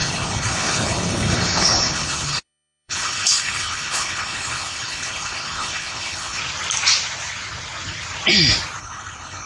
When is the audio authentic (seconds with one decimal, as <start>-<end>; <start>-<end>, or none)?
6.4-8.8